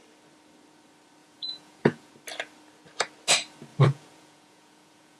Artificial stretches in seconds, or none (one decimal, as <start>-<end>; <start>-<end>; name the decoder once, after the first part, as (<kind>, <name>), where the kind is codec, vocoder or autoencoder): 1.2-2.1 (vocoder, Vocos); 3.7-5.2